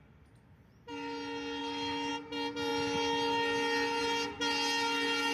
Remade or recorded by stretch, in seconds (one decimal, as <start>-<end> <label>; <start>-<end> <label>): 0.0-1.6 recorded; 1.6-2.1 remade; 2.1-5.3 recorded